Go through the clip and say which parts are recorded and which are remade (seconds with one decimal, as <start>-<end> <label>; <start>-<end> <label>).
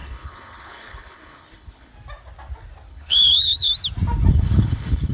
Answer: 0.0-1.9 remade; 1.9-2.9 recorded; 2.9-3.7 remade; 3.7-4.3 recorded; 4.3-5.1 remade